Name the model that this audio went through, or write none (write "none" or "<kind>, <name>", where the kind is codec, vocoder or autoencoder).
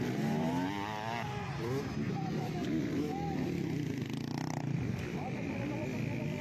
none